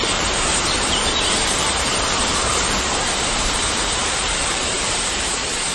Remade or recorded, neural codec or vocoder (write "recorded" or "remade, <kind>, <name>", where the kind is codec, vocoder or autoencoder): remade, vocoder, BigVGAN v2